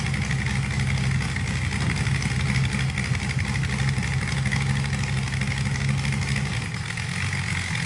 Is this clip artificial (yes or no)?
no